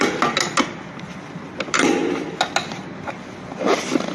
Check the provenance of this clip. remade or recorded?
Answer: recorded